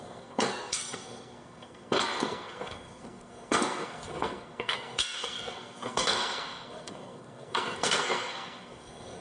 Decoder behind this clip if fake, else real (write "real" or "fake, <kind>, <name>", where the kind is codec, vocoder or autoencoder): fake, codec, SNAC